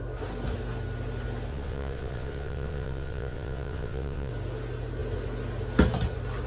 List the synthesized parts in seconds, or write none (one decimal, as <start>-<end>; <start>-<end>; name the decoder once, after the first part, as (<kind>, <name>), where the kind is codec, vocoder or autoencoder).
1.5-4.3 (vocoder, WaveNeXt)